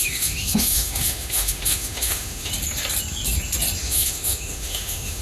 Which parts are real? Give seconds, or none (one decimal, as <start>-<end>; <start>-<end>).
2.5-3.8